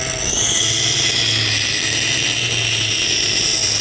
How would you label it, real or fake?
real